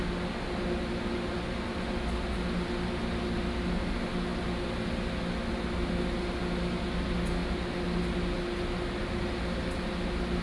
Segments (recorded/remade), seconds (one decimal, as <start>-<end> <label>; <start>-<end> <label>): 0.0-10.4 recorded